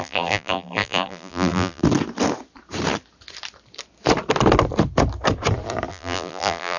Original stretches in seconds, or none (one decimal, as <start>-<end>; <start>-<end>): 1.8-5.9